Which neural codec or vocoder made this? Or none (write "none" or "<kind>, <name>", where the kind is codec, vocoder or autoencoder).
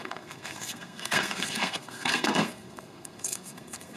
codec, SNAC